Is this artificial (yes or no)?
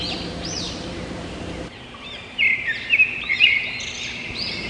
yes